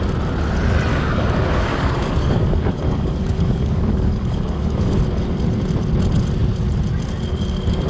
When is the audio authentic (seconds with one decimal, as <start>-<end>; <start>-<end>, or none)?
0.0-0.9; 5.0-7.9

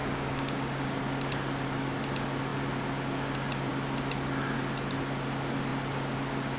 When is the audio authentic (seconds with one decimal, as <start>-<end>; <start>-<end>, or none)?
1.0-6.6

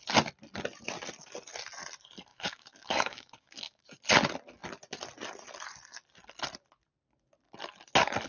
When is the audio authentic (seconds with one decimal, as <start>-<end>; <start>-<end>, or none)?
0.0-2.3; 3.8-8.3

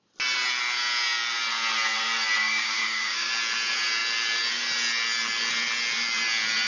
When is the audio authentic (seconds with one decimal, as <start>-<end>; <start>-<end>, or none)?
0.0-2.4; 3.3-6.7

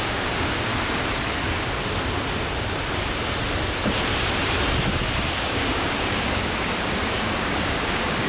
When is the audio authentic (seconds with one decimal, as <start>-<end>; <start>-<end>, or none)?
0.7-5.4